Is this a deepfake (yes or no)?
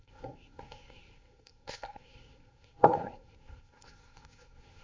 yes